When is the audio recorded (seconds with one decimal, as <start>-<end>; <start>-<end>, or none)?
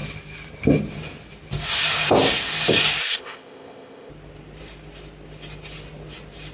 0.0-3.0; 4.1-6.5